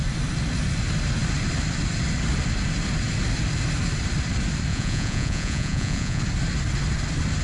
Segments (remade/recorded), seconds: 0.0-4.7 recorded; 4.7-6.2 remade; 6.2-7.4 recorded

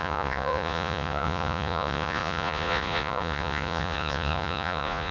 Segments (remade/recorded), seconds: 0.0-5.1 remade

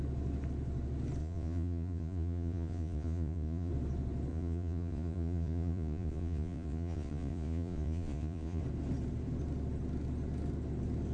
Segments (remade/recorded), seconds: 0.0-1.2 recorded; 1.2-3.7 remade; 3.7-4.3 recorded; 4.3-8.6 remade; 8.6-11.1 recorded

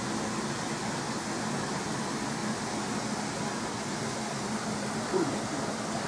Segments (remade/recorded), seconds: 0.0-6.1 recorded

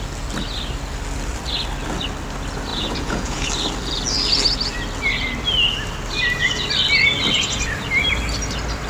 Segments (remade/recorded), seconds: 0.0-2.7 recorded; 2.7-3.5 remade; 3.5-8.9 recorded

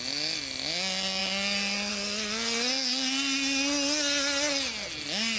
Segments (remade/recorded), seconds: 0.0-5.4 recorded

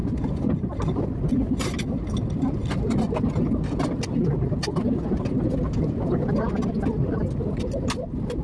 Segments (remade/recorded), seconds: 0.0-8.4 recorded

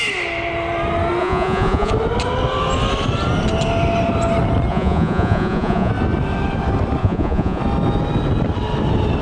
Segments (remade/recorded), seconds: 0.0-1.2 recorded; 1.2-1.9 remade; 1.9-4.7 recorded; 4.7-5.9 remade; 5.9-7.0 recorded; 7.0-7.6 remade; 7.6-9.2 recorded